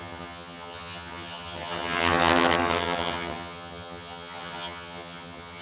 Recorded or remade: remade